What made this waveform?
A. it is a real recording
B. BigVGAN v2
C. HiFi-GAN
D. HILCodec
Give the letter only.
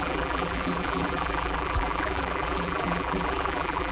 B